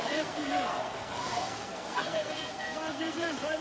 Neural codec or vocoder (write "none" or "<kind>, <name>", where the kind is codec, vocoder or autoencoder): codec, SNAC